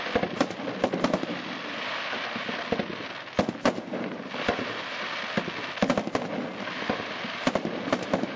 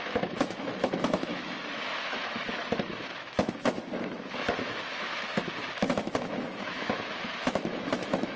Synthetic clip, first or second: second